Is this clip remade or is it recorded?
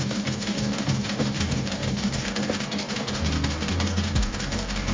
remade